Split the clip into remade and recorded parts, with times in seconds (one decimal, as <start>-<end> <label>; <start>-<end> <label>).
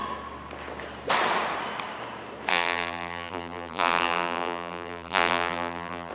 0.0-2.5 recorded; 2.5-6.1 remade